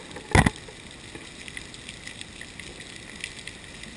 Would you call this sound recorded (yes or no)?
yes